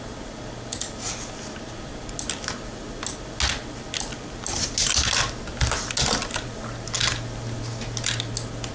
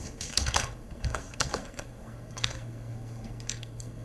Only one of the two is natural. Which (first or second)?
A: first